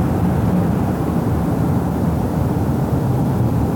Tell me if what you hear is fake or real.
real